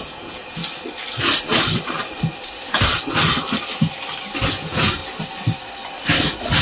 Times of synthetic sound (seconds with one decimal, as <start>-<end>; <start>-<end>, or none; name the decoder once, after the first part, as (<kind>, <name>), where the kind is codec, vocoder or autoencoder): 0.0-0.6 (vocoder, Vocos); 4.5-5.0